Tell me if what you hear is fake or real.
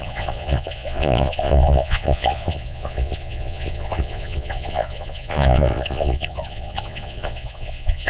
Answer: fake